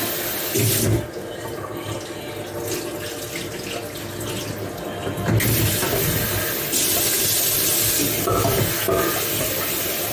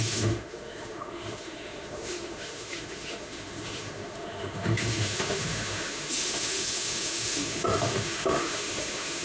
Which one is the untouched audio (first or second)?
first